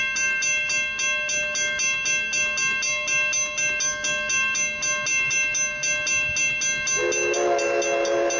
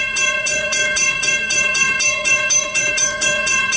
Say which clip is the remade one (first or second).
second